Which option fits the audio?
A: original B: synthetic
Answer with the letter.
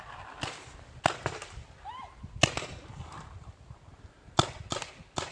A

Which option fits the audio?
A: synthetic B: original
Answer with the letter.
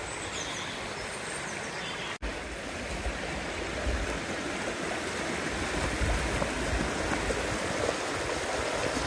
B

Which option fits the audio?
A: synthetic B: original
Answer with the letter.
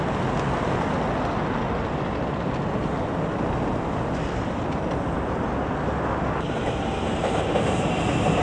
B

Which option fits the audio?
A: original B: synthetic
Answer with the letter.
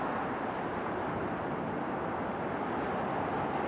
A